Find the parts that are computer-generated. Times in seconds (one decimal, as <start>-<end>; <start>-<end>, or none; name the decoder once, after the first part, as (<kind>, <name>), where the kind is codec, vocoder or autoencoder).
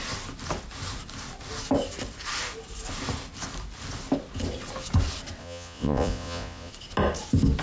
5.4-6.7 (vocoder, Vocos)